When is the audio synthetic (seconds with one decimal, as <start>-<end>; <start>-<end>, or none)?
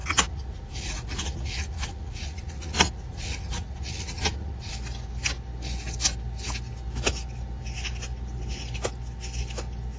0.0-4.7